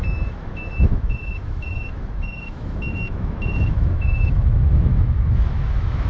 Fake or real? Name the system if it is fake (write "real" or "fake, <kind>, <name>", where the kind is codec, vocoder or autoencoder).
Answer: fake, autoencoder, DAC-VAE